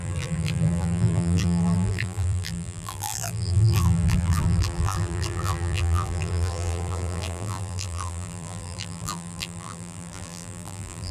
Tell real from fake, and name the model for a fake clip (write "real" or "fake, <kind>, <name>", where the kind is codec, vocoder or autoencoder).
fake, vocoder, BigVGAN v2